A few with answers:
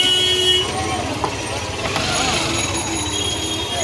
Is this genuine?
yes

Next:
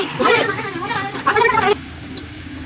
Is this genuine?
no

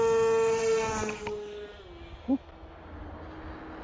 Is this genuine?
yes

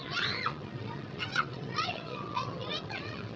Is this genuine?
no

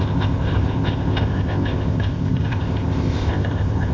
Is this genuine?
no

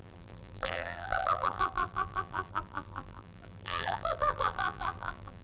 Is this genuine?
no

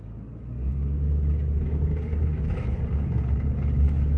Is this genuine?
no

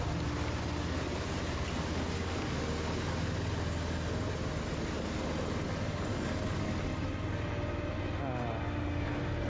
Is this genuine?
yes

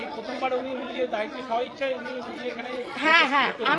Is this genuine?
no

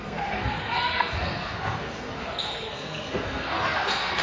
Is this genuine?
no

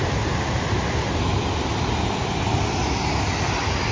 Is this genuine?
yes